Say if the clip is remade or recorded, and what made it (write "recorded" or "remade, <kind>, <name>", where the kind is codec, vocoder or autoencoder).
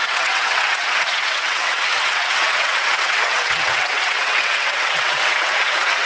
remade, vocoder, WaveNeXt